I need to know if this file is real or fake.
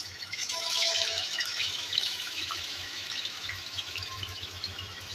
fake